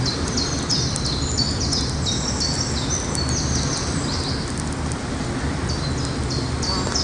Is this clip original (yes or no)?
yes